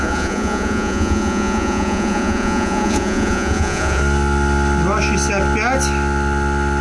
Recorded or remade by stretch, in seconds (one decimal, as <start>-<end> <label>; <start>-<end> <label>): 0.0-4.0 remade; 4.0-6.8 recorded

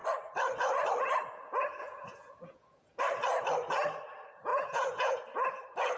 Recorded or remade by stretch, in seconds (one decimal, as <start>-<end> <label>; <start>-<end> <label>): 0.0-1.8 recorded; 1.8-3.0 remade; 3.0-4.5 recorded; 4.5-5.2 remade; 5.2-6.0 recorded

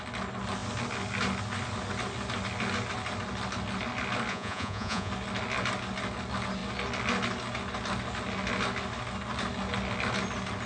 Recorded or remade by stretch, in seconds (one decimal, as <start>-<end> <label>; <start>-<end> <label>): 0.0-4.3 recorded; 4.3-5.1 remade; 5.1-10.7 recorded